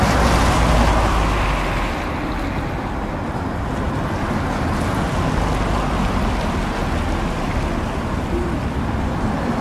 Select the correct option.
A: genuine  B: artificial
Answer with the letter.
A